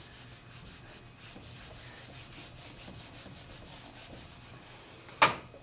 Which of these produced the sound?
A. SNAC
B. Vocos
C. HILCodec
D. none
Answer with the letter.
D